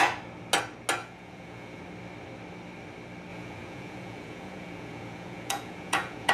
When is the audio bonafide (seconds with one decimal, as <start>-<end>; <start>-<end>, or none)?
0.0-1.0; 1.8-3.3